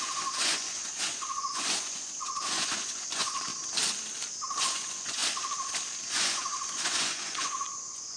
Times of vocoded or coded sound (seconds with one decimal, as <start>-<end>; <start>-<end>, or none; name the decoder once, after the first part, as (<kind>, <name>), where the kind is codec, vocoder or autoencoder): 0.0-3.5 (vocoder, Vocos); 4.6-5.2; 6.1-8.2